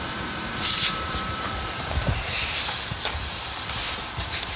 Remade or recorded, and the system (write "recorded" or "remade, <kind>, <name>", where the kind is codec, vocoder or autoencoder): remade, vocoder, BigVGAN v2